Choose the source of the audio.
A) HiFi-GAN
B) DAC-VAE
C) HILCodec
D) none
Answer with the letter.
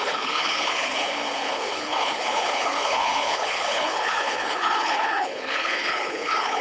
C